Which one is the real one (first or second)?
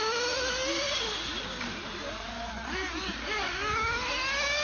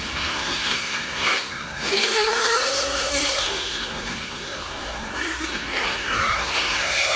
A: first